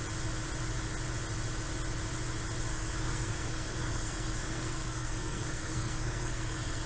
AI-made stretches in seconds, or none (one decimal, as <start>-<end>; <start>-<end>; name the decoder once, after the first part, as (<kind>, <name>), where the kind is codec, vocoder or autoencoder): 2.7-6.9 (codec, SNAC)